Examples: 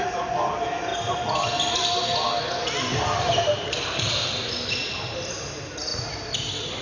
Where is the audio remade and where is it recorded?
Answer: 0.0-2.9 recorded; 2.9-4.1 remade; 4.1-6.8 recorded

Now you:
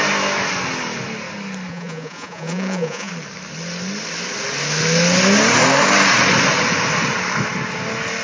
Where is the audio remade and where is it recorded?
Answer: 0.0-1.7 recorded; 1.7-3.1 remade; 3.1-8.2 recorded

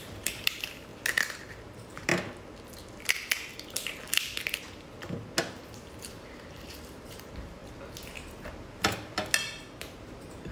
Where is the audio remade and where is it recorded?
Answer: 0.0-0.9 remade; 0.9-1.4 recorded; 1.4-2.1 remade; 2.1-6.1 recorded; 6.1-7.6 remade; 7.6-9.8 recorded; 9.8-10.5 remade

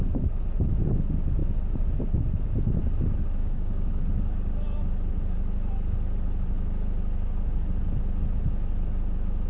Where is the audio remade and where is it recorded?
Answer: 0.0-3.4 recorded; 3.4-4.0 remade; 4.0-9.5 recorded

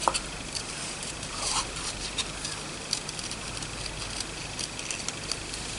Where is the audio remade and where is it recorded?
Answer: 0.0-0.6 recorded; 0.6-2.2 remade; 2.2-5.8 recorded

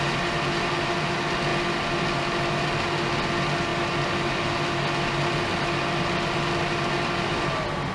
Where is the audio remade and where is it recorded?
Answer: 0.0-7.9 recorded

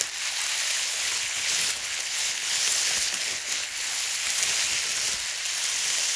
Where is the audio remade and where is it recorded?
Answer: 0.0-0.7 recorded; 0.7-4.3 remade; 4.3-6.2 recorded